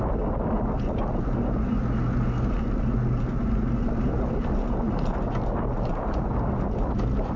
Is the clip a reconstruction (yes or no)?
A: no